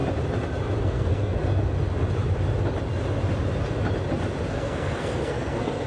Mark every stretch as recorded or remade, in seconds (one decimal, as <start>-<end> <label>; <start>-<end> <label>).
0.0-0.8 recorded; 0.8-1.4 remade; 1.4-4.5 recorded; 4.5-5.9 remade